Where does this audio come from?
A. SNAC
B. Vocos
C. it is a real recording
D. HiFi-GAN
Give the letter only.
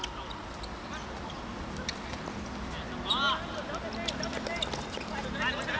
C